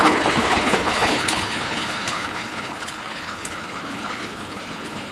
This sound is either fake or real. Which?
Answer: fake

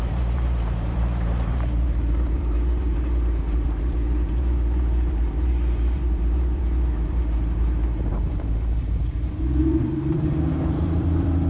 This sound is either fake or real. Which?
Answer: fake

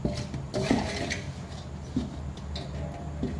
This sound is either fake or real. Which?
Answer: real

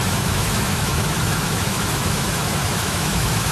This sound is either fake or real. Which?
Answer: fake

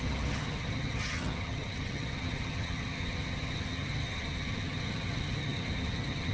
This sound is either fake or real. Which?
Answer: fake